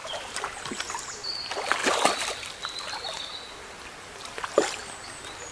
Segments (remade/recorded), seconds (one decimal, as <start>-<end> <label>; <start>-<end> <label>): 0.0-0.6 remade; 0.6-5.5 recorded